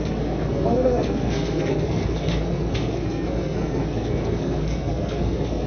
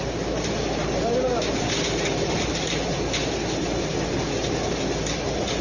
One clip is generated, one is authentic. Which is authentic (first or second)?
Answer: second